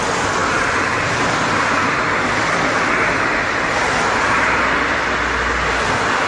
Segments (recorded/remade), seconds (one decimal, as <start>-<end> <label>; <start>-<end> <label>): 0.0-6.3 recorded

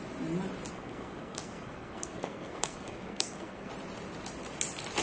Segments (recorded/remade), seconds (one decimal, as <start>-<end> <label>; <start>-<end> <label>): 0.0-0.7 recorded; 0.7-3.7 remade; 3.7-5.0 recorded

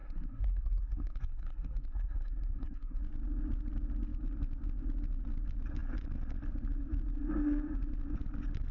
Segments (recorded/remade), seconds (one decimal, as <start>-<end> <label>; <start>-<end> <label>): 0.0-3.0 remade; 3.0-8.7 recorded

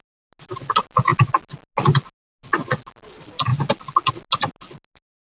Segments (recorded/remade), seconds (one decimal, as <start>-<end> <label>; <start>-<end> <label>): 0.0-5.2 recorded

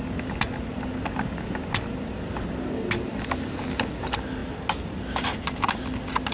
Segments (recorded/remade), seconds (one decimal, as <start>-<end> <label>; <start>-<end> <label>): 0.0-6.3 recorded